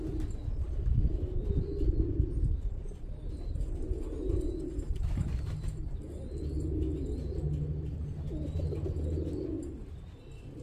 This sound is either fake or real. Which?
real